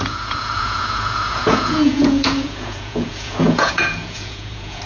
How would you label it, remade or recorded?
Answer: remade